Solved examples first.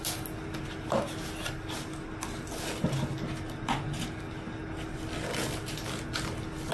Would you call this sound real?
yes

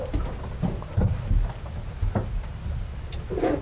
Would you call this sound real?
yes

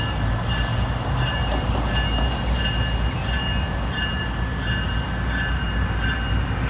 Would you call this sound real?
yes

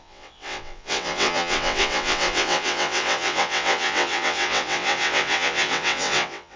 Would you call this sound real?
no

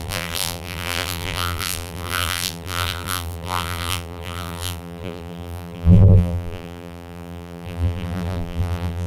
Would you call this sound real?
no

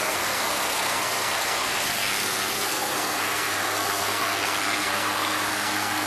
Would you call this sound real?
no